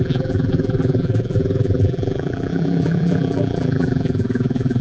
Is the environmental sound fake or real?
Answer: fake